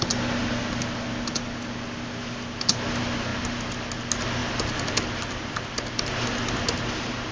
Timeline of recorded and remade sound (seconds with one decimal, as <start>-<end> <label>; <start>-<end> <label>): 0.0-7.3 recorded